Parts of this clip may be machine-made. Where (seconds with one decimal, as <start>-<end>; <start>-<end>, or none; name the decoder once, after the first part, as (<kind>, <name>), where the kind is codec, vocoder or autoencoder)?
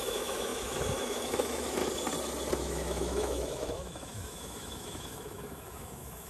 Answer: 0.0-1.8 (autoencoder, DAC-VAE); 2.5-6.3